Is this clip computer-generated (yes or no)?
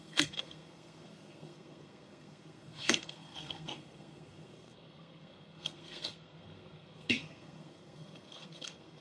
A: yes